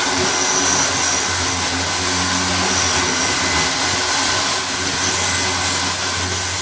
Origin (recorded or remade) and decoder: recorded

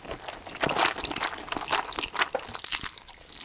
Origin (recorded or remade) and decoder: recorded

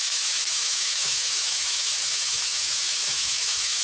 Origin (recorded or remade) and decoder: remade, autoencoder, DAC-VAE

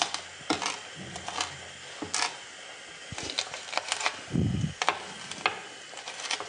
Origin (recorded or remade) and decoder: recorded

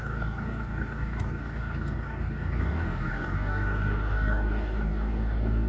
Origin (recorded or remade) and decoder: remade, codec, DAC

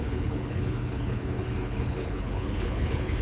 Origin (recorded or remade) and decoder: remade, codec, HILCodec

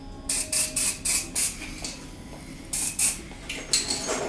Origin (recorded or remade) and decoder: recorded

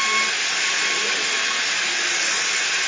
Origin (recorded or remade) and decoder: recorded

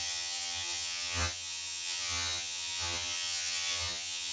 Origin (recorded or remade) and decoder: remade, vocoder, HiFi-GAN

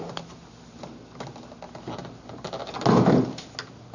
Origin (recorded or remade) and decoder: recorded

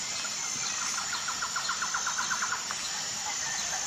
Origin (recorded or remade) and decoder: recorded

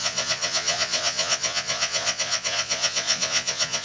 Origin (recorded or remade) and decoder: remade, vocoder, Vocos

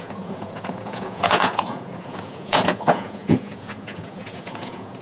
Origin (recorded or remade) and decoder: remade, vocoder, Vocos